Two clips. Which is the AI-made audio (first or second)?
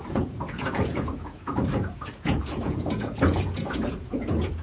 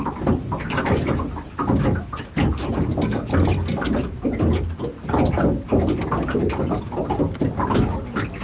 first